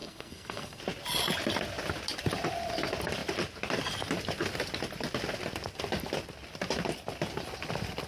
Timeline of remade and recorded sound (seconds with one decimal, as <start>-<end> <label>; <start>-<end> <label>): 0.0-0.8 remade; 0.8-8.1 recorded

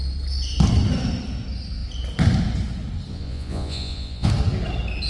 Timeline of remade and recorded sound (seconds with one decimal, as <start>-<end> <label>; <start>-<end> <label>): 0.0-3.1 recorded; 3.1-4.3 remade; 4.3-5.1 recorded

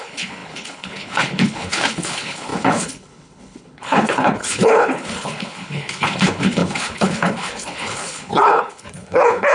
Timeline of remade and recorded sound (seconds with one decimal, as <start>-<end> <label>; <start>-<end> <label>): 0.0-9.5 remade

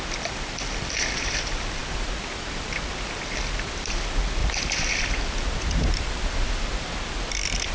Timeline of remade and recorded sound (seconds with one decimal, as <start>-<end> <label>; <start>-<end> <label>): 0.0-7.7 recorded